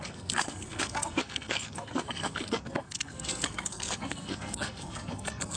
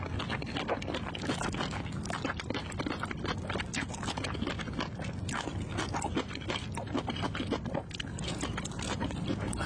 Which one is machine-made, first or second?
first